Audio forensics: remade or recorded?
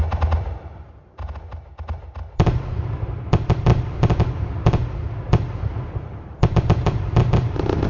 remade